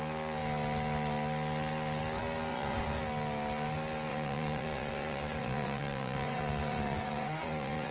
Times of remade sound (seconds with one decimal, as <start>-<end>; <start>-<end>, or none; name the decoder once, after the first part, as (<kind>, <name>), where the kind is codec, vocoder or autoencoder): 2.5-3.0 (vocoder, Vocos); 4.1-7.9